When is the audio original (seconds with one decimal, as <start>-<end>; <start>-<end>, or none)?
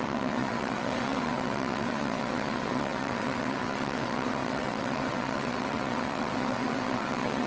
none